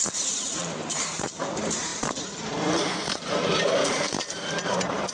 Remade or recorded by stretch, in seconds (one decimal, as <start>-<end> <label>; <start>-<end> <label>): 0.0-5.1 remade